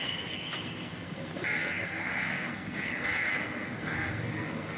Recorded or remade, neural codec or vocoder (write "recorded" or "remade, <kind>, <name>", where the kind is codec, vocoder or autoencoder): remade, codec, SNAC